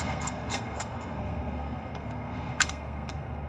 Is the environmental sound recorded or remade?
remade